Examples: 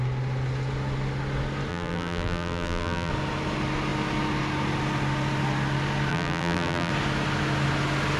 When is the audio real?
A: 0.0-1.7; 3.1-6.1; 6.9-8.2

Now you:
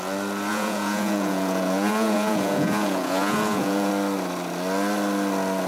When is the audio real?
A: 0.0-0.5; 3.9-5.7

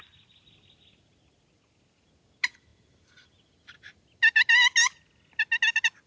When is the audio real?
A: 0.0-6.1